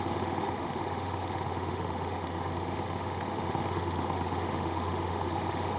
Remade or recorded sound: remade